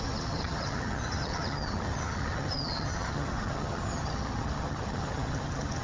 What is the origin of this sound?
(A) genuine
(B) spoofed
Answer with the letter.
B